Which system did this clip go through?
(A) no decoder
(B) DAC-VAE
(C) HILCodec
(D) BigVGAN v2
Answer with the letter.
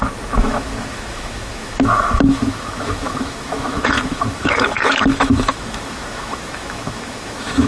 B